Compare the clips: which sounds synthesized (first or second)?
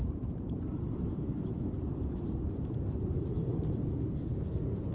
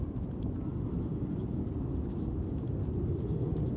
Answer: first